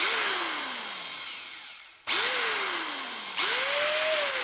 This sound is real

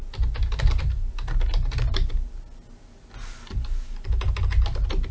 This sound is real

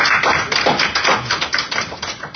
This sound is real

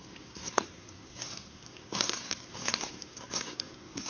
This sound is fake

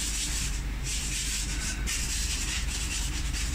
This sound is fake